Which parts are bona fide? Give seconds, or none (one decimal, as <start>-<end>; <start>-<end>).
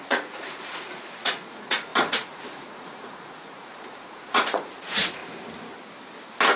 5.2-6.6